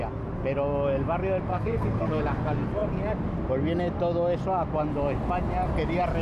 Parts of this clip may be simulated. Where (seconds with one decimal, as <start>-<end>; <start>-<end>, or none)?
1.5-2.2